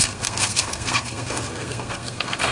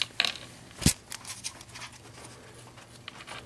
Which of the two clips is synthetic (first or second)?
first